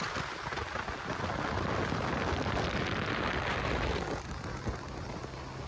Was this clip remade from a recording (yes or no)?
no